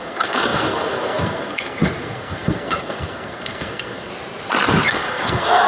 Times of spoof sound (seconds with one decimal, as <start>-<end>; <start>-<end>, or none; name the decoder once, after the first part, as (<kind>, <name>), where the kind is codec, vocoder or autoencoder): 0.0-4.1 (codec, SNAC); 4.9-5.7